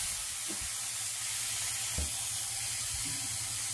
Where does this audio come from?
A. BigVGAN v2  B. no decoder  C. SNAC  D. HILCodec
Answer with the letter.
B